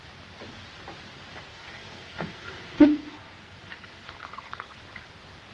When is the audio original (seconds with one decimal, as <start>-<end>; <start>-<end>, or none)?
0.0-1.5; 4.8-5.5